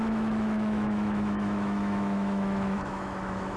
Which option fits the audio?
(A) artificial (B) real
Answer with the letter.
A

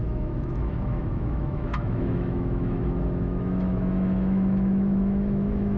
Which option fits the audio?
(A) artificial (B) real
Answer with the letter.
A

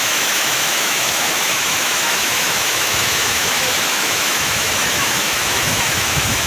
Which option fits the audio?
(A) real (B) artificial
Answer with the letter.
B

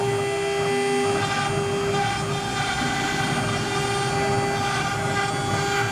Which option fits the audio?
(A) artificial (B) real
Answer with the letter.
B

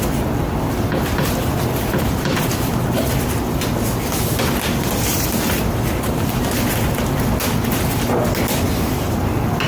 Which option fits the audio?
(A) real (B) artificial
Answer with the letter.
A